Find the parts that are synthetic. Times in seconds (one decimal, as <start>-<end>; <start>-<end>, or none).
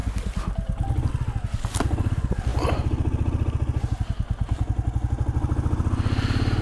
none